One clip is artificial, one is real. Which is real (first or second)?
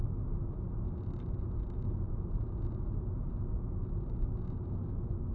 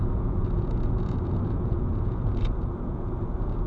first